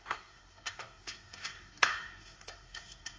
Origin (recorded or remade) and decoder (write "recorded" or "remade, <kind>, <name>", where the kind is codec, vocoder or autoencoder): remade, codec, SNAC